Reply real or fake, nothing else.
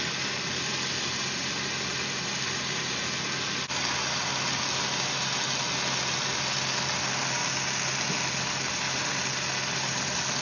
real